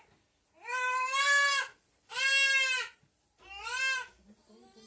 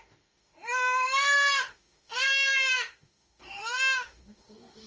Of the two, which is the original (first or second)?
first